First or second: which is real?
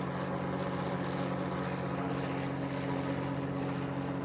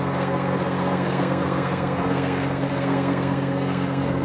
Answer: first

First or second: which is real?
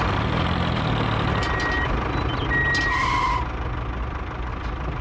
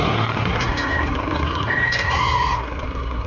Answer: first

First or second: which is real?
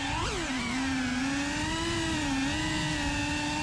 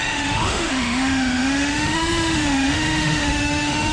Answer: first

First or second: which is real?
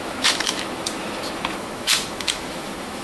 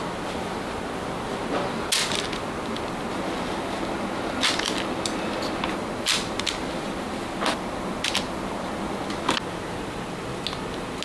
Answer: second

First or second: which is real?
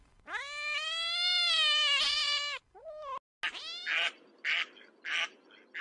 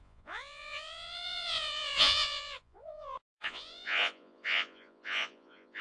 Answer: first